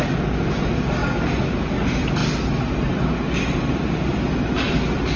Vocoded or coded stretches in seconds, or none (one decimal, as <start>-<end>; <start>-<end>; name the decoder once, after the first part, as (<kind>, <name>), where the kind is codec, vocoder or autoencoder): 0.0-1.0 (vocoder, BigVGAN v2); 1.5-2.2; 3.5-4.1